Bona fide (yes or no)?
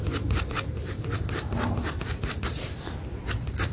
no